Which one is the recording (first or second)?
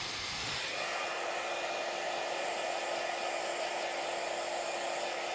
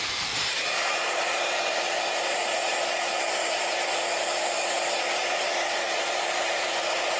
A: first